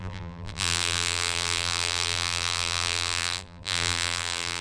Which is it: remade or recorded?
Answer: remade